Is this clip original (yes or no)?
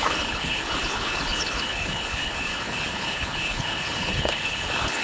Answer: no